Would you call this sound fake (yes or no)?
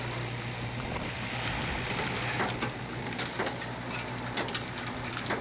no